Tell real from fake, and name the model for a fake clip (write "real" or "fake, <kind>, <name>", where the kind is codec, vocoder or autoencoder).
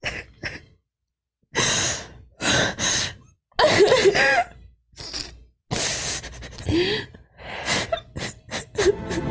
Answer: real